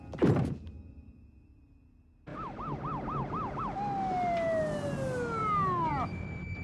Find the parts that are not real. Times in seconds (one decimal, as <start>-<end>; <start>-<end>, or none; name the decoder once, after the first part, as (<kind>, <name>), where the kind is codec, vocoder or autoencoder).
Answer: 2.3-3.6 (vocoder, BigVGAN v2)